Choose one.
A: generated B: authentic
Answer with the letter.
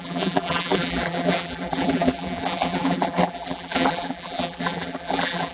A